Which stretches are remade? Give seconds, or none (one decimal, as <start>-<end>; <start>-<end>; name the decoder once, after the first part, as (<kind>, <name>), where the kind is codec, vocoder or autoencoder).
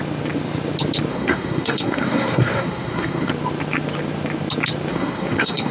1.1-3.3 (codec, SNAC); 4.9-5.7